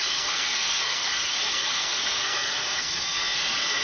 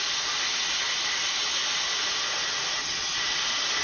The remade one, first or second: first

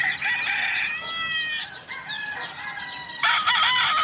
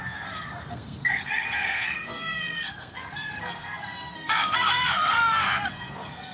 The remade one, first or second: second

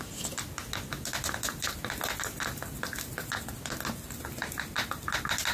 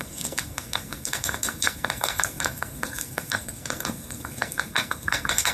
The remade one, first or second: second